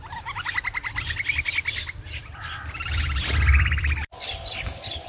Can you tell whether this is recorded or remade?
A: remade